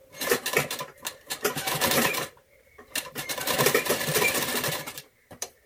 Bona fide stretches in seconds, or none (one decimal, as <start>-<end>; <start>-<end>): 4.1-4.7